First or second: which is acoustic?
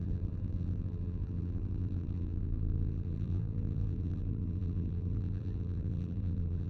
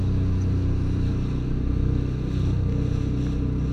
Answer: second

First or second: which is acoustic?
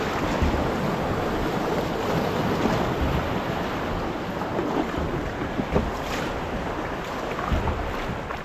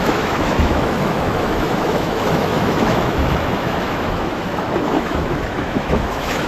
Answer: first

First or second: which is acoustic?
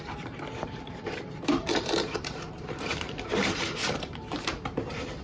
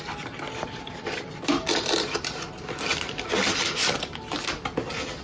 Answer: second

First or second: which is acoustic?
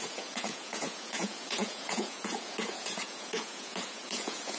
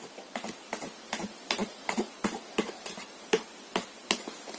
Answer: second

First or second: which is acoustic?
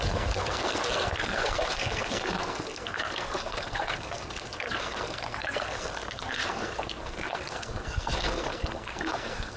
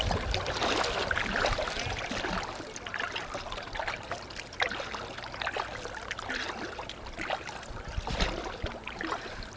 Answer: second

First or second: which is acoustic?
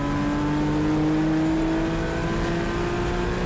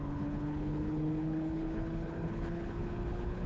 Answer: first